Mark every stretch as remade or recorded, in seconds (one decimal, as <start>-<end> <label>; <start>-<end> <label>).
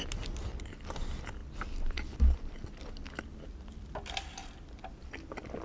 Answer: 0.0-5.6 recorded